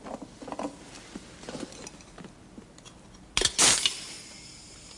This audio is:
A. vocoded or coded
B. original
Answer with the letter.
B